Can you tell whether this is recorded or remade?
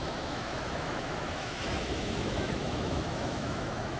remade